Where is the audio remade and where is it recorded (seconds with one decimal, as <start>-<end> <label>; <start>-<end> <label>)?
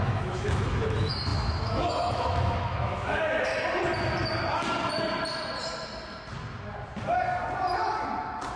0.0-3.5 remade; 3.5-8.6 recorded